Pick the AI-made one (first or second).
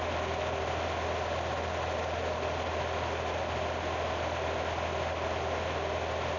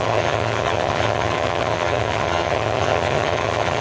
second